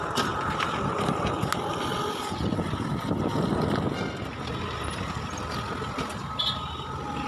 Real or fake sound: real